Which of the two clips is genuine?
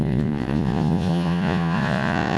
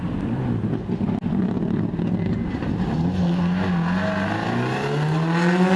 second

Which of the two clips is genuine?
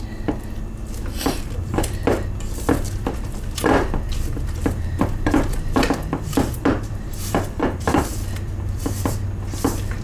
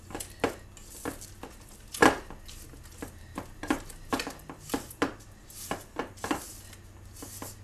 second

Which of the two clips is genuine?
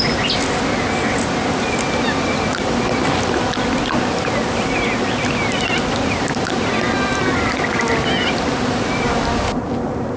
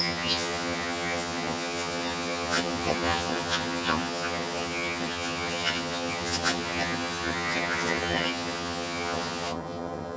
first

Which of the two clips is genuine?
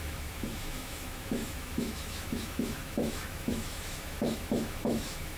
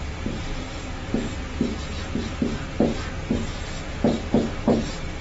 second